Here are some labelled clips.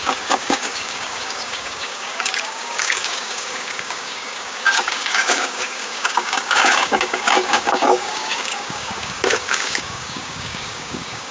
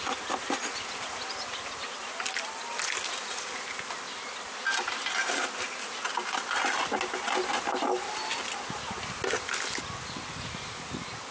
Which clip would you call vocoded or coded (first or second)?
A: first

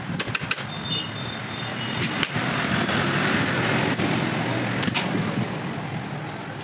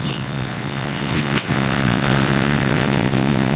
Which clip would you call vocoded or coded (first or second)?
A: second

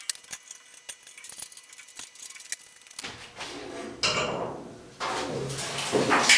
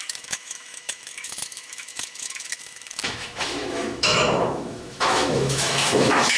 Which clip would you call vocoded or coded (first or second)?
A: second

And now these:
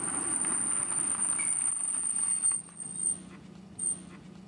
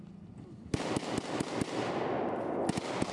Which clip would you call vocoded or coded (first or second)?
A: first